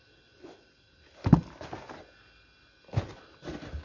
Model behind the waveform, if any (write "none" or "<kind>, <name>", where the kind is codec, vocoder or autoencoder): none